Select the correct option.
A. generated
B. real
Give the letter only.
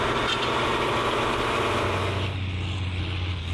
B